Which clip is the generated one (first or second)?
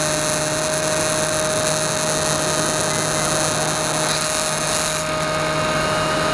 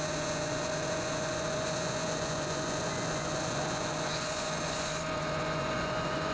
second